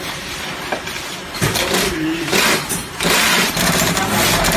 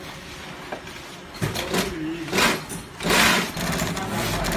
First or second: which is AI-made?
first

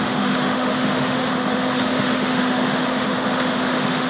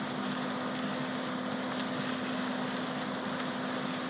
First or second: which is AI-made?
first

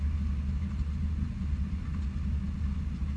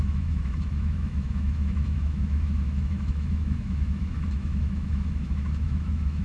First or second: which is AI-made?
second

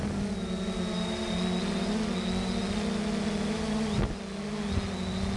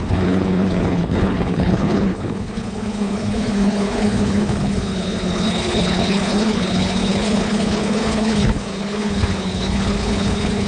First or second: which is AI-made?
second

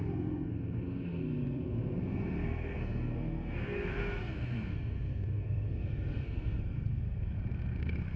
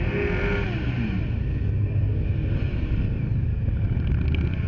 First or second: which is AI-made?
first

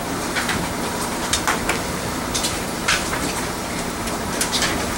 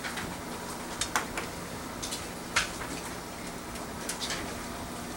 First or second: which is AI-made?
first